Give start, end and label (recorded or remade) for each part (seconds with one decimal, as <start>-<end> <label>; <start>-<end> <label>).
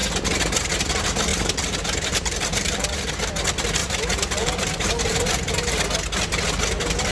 0.0-1.3 recorded; 1.3-3.3 remade; 3.3-3.8 recorded; 3.8-5.8 remade; 5.8-7.1 recorded